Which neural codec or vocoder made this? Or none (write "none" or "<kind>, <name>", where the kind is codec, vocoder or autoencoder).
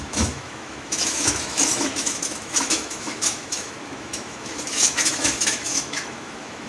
autoencoder, DAC-VAE